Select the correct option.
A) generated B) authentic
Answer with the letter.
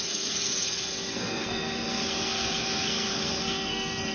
A